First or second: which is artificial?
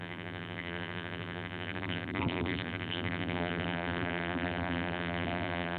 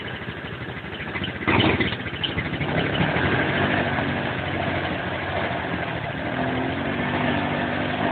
first